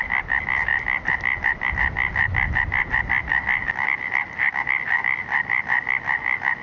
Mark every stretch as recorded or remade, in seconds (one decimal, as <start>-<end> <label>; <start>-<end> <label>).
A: 0.0-6.6 recorded

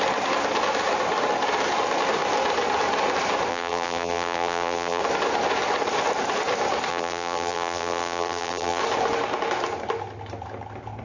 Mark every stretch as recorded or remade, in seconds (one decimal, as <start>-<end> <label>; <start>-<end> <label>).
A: 0.0-3.5 recorded; 3.5-5.0 remade; 5.0-6.9 recorded; 6.9-8.8 remade; 8.8-11.0 recorded